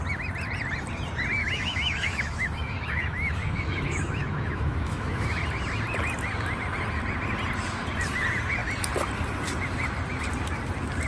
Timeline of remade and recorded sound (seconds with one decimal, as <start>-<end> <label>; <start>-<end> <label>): 0.0-1.4 recorded; 1.4-5.4 remade; 5.4-11.1 recorded